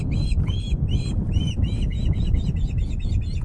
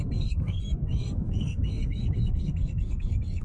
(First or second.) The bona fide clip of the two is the first